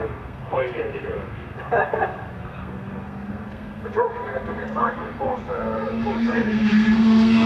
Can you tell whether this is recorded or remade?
remade